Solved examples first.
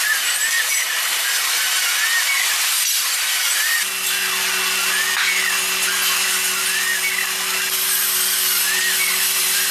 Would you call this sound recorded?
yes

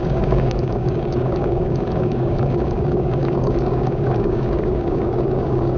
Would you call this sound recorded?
no